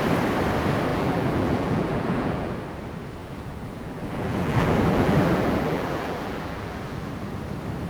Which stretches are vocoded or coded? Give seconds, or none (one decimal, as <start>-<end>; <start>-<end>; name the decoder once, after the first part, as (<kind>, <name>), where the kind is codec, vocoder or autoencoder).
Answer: 0.9-2.5 (vocoder, BigVGAN v2); 3.2-7.1